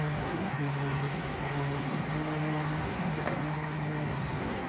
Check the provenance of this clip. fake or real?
fake